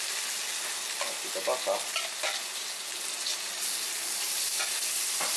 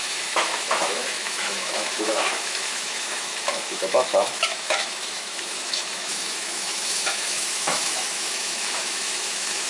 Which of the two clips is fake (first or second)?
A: second